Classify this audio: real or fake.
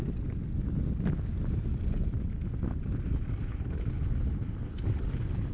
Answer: real